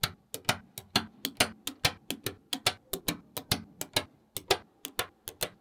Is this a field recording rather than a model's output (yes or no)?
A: yes